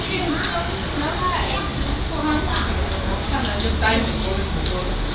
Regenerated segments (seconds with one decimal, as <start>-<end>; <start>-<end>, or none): none